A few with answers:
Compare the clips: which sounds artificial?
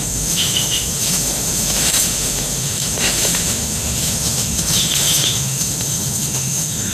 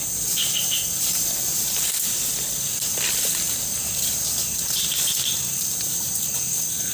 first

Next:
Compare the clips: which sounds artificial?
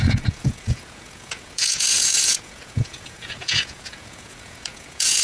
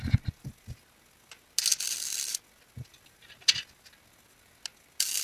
first